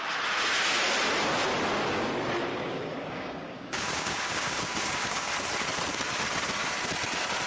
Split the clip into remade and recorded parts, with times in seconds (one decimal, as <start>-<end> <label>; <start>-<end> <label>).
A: 0.0-2.5 recorded; 2.5-5.3 remade; 5.3-7.5 recorded